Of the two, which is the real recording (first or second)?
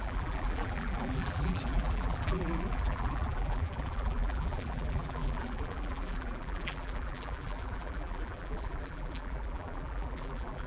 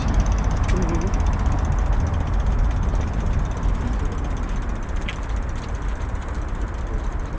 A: second